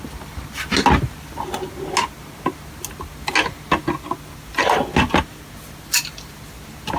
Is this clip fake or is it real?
real